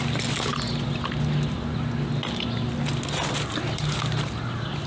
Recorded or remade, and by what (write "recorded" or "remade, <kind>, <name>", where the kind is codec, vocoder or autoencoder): recorded